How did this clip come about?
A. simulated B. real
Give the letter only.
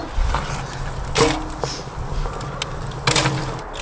B